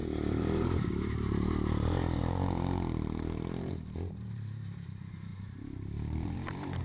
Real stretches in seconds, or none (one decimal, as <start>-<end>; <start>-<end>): none